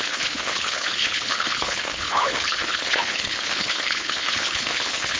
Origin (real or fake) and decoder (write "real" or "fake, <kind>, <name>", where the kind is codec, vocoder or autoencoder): fake, codec, HILCodec